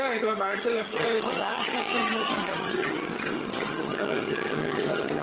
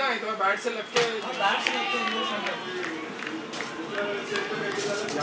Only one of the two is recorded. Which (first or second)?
second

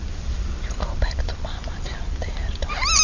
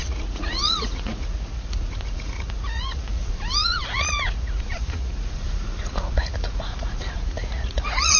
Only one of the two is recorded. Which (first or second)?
first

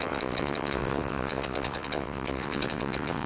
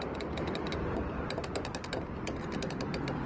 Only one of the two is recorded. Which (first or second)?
second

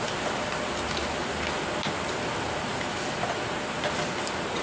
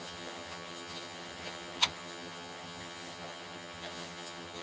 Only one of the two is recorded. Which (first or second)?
first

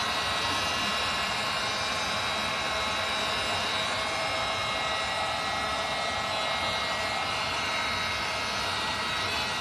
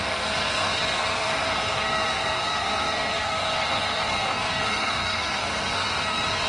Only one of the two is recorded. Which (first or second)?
first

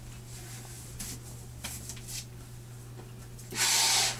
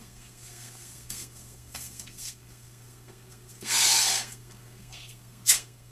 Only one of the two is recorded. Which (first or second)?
first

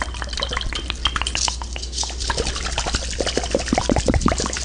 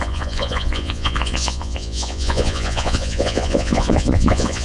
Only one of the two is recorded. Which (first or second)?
first